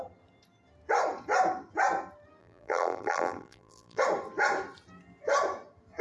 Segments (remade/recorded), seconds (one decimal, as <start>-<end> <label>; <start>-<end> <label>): 0.0-2.4 recorded; 2.4-4.0 remade; 4.0-6.0 recorded